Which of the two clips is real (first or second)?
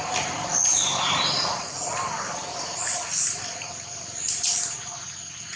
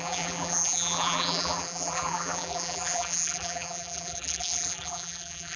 first